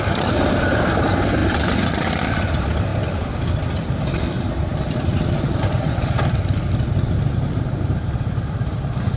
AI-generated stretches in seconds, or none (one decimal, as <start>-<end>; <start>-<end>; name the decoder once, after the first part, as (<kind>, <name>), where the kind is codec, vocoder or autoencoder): 0.0-9.2 (vocoder, BigVGAN v2)